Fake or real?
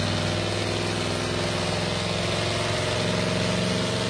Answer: real